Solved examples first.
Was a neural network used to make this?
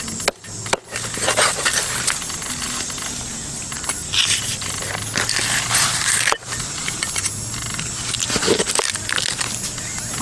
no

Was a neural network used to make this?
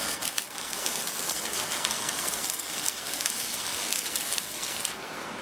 yes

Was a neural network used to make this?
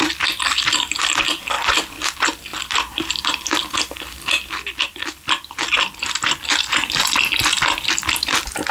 no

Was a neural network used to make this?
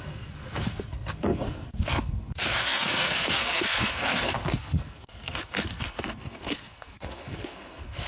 yes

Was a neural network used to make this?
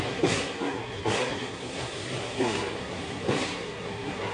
yes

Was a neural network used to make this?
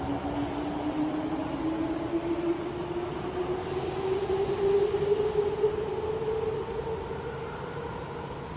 no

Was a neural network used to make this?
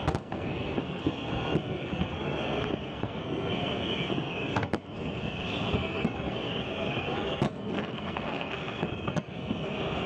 yes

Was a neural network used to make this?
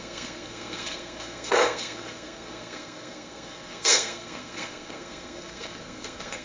yes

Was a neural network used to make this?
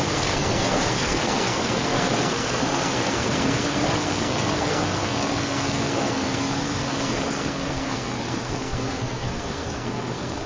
yes